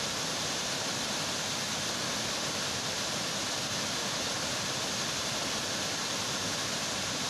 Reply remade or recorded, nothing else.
remade